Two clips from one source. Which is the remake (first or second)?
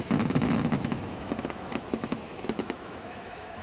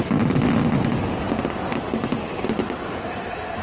first